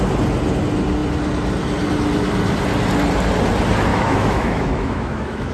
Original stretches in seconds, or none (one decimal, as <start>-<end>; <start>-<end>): 0.0-3.9